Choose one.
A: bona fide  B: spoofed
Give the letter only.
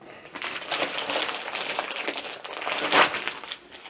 B